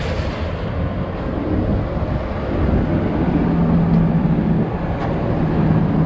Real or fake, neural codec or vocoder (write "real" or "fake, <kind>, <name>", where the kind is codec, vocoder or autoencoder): real